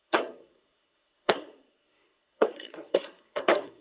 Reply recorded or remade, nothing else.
remade